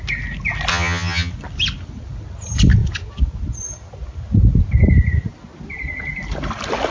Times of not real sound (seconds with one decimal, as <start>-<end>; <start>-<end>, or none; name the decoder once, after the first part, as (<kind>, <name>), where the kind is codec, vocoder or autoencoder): 0.7-1.3 (vocoder, HiFi-GAN)